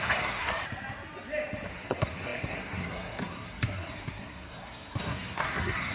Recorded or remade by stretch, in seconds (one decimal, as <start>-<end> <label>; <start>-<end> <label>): 0.0-0.5 remade; 0.5-1.7 recorded; 1.7-5.9 remade